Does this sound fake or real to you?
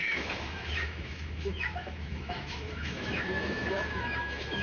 fake